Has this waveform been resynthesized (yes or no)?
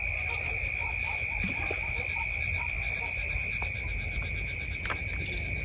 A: no